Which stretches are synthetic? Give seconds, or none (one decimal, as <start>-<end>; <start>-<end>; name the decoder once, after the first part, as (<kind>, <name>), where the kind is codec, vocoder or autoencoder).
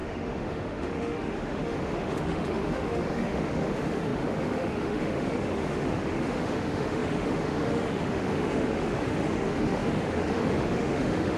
0.0-11.4 (autoencoder, DAC-VAE)